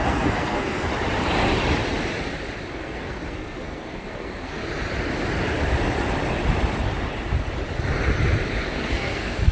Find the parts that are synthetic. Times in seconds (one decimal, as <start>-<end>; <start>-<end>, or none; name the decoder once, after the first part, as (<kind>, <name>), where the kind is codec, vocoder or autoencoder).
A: 0.0-0.9 (codec, SNAC); 2.7-4.6; 8.6-9.5